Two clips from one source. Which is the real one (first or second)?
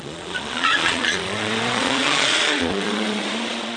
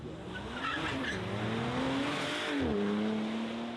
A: second